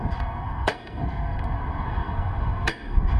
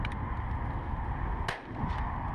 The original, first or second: second